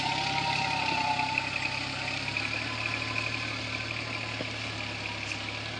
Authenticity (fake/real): real